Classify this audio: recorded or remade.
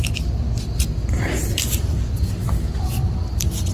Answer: recorded